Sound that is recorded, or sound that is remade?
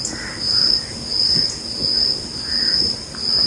recorded